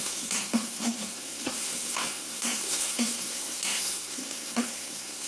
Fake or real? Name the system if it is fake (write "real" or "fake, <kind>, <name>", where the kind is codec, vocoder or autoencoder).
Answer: fake, codec, SNAC